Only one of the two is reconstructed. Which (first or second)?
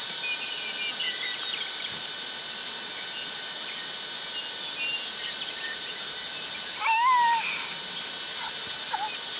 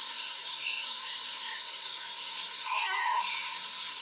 second